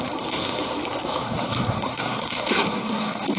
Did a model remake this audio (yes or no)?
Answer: yes